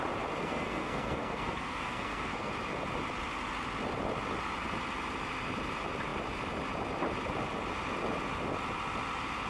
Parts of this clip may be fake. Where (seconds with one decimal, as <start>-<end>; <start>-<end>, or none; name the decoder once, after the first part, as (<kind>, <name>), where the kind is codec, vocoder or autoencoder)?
0.4-2.5 (codec, SNAC)